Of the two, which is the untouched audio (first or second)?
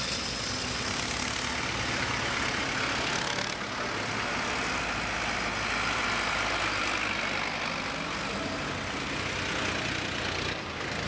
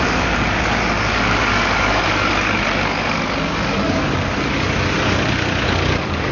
first